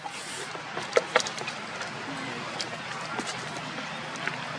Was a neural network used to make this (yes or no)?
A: no